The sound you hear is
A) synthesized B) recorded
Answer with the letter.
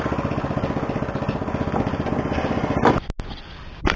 B